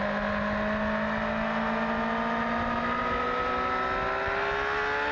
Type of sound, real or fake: real